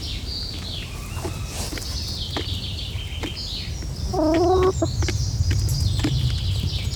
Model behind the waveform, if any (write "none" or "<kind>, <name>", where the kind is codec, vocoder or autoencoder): none